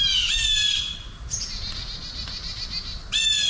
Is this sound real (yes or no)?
yes